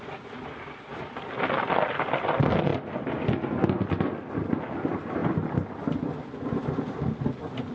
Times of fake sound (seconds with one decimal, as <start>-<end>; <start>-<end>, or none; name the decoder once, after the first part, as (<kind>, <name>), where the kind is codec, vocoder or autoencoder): none